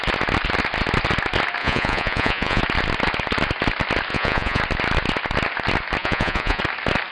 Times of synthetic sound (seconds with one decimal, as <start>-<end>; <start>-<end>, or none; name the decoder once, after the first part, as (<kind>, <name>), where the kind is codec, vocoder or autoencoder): 1.6-2.6 (vocoder, Vocos); 4.1-4.6; 6.0-6.6